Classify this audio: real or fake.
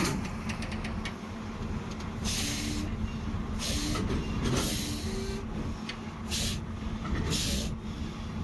real